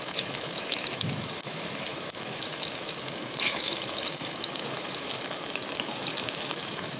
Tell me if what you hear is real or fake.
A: fake